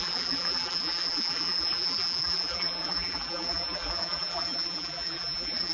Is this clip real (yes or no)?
no